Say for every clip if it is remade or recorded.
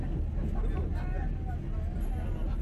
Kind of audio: recorded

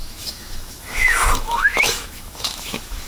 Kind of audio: remade